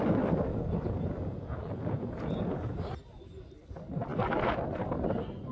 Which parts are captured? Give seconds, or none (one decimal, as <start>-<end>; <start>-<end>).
0.0-0.5; 2.8-5.5